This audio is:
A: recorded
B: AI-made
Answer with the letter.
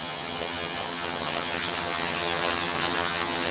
B